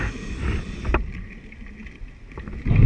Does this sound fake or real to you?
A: real